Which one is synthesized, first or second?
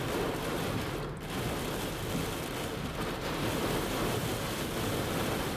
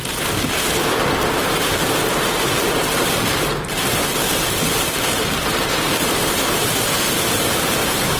second